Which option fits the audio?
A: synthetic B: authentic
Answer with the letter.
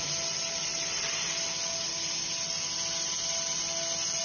B